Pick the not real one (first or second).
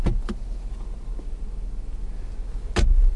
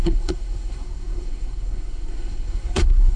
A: second